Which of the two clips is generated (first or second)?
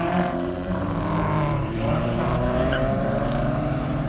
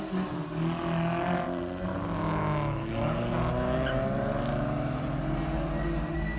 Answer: first